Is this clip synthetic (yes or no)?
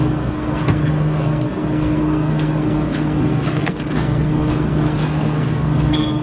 yes